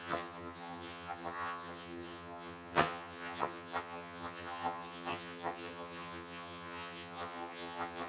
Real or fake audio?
fake